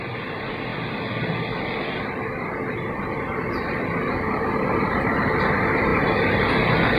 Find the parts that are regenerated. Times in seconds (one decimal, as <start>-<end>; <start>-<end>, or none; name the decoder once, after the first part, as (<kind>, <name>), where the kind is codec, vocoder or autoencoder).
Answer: 0.0-0.7 (vocoder, BigVGAN v2); 2.7-7.0